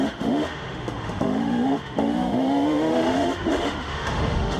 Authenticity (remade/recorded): remade